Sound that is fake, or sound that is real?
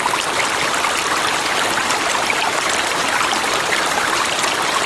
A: real